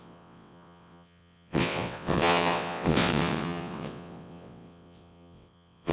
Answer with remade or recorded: remade